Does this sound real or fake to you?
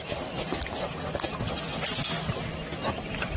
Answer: real